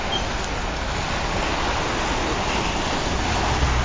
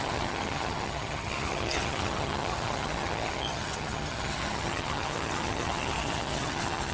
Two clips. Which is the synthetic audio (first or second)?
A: second